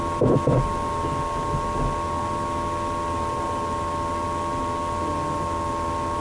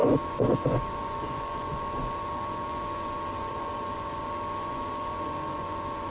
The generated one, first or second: second